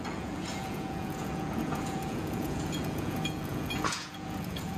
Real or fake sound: fake